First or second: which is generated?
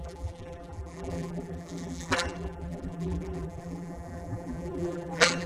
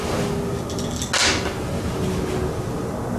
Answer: first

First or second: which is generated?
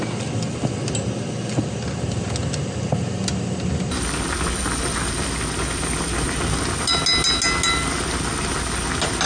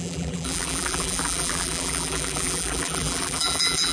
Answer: second